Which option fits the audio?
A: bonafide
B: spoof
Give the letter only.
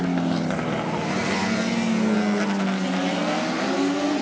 A